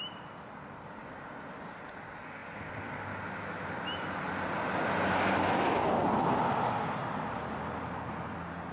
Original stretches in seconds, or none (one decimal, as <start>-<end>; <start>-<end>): 0.0-8.7